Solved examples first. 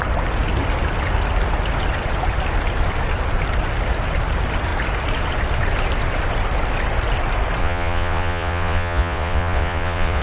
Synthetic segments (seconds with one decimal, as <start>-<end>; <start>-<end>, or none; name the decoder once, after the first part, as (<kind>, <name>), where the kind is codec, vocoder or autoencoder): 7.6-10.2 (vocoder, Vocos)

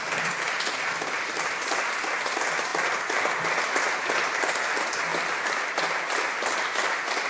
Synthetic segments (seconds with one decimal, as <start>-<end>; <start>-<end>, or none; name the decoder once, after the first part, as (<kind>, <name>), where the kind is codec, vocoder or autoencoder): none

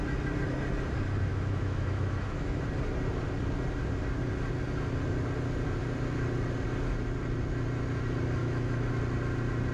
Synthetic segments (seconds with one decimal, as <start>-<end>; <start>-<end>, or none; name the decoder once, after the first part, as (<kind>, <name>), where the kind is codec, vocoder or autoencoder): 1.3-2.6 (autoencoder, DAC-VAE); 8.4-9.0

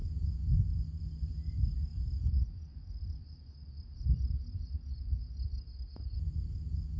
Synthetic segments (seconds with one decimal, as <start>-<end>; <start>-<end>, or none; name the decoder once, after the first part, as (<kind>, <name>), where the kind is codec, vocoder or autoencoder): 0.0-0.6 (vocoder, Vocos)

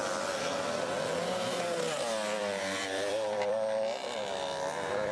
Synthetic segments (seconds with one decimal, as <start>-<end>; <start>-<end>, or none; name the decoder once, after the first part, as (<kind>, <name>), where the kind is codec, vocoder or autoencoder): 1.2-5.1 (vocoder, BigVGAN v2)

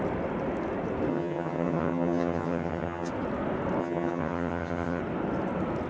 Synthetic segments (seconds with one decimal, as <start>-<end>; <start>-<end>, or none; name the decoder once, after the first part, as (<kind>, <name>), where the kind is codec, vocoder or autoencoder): 1.1-3.1 (vocoder, HiFi-GAN); 3.8-5.0

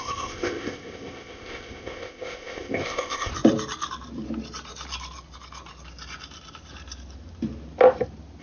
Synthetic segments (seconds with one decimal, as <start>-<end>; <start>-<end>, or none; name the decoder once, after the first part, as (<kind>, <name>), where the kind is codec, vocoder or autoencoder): 0.0-3.3 (codec, ZipCodec)

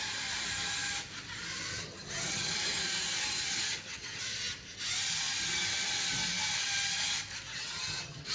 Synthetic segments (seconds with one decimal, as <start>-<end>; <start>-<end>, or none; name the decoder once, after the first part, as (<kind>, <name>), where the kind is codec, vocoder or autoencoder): 1.7-2.5 (vocoder, HiFi-GAN); 3.5-4.2; 7.5-8.3